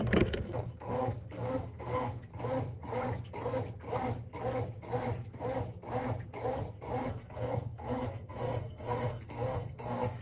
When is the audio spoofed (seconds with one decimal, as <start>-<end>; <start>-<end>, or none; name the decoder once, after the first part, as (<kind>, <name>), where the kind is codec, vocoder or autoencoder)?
0.0-2.3 (codec, SNAC); 7.1-10.2